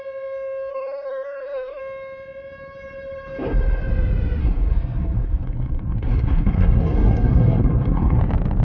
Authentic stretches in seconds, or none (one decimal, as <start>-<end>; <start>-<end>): 0.0-0.7; 1.8-4.4; 8.2-8.6